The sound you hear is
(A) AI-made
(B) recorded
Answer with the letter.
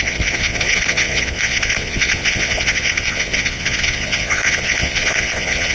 A